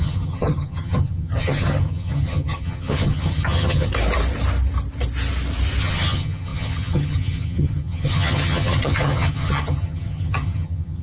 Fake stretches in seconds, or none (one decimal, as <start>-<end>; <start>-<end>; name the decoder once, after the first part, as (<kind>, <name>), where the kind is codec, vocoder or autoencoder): 0.0-3.9 (vocoder, HiFi-GAN); 5.8-11.0